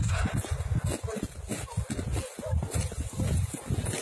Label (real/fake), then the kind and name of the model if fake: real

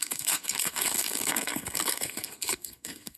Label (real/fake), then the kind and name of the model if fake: fake, codec, SNAC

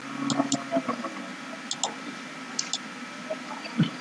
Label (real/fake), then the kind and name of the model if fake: real